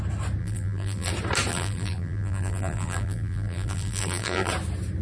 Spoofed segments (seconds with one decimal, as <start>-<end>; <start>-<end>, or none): 0.4-1.1; 1.5-4.5